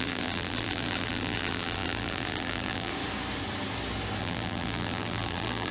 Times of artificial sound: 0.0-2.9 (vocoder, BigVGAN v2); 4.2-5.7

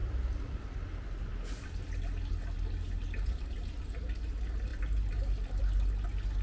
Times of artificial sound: 0.0-0.6 (vocoder, BigVGAN v2)

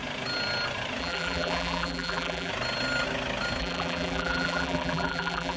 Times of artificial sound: 1.0-2.5 (vocoder, BigVGAN v2); 3.6-5.6